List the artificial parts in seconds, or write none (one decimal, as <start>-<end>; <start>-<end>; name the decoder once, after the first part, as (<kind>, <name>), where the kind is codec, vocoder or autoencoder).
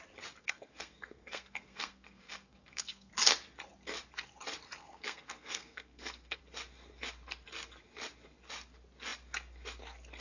0.4-3.1 (codec, SNAC); 4.8-6.4